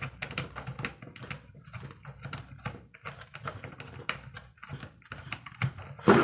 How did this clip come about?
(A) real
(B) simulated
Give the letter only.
A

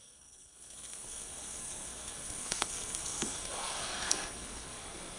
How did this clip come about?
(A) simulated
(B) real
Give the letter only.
A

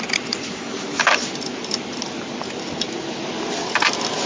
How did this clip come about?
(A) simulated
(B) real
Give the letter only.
B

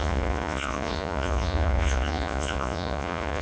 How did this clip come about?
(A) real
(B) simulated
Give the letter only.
B